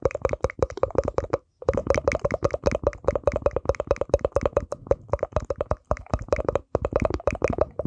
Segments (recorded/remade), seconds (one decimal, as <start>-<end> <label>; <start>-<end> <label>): 0.0-7.9 recorded